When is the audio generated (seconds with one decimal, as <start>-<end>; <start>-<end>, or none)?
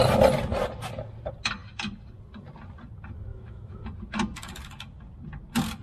3.3-3.8